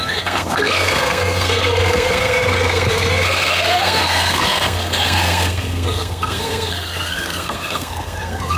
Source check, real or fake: fake